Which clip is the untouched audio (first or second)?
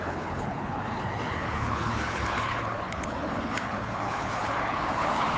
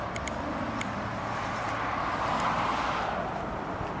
second